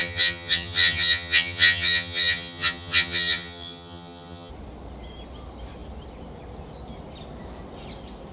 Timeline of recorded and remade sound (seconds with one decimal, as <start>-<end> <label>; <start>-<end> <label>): 0.0-4.5 remade; 4.5-8.3 recorded